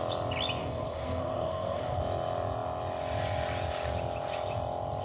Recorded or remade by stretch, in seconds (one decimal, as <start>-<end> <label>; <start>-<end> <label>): 0.0-0.6 recorded; 0.6-2.0 remade; 2.0-5.0 recorded